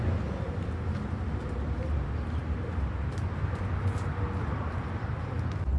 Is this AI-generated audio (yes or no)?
no